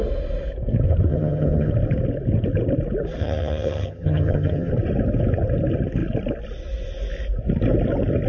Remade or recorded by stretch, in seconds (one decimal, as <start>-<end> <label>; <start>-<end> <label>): 0.0-1.1 recorded; 1.1-1.7 remade; 1.7-3.2 recorded; 3.2-4.7 remade; 4.7-8.3 recorded